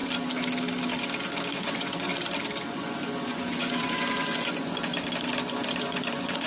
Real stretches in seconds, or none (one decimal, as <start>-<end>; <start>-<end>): 0.0-1.5; 2.1-2.7; 4.9-5.8